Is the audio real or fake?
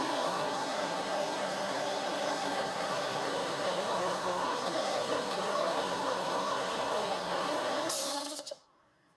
fake